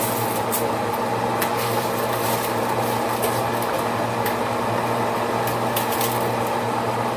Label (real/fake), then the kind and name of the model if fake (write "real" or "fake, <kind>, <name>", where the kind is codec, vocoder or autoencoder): real